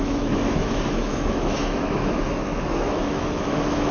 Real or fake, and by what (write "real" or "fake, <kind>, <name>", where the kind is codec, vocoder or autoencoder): fake, autoencoder, DAC-VAE